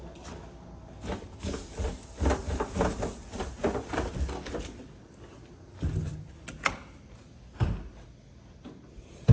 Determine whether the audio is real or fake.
real